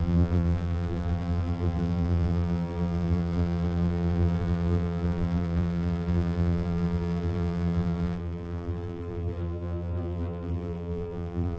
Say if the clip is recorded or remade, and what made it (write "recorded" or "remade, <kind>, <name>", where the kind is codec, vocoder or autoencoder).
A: remade, vocoder, BigVGAN v2